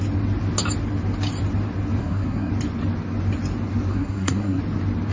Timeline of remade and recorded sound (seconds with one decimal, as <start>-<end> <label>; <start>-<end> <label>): 0.0-2.0 recorded; 2.0-2.5 remade; 2.5-3.9 recorded; 3.9-4.6 remade; 4.6-5.1 recorded